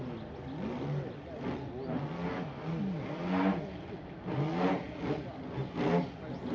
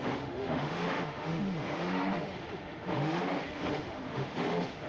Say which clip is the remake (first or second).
second